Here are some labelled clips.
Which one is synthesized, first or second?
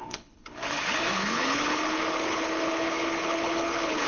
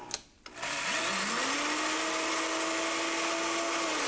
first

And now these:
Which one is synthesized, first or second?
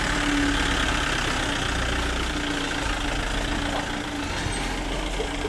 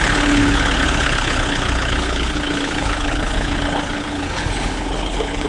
second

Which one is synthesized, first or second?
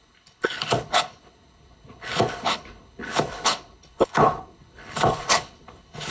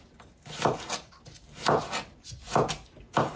first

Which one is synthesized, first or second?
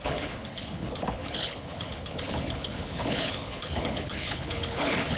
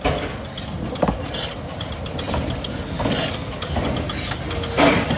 first